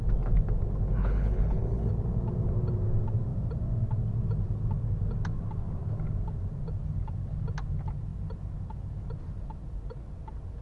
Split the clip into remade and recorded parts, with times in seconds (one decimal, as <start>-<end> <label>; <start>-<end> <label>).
0.0-1.0 recorded; 1.0-1.9 remade; 1.9-10.6 recorded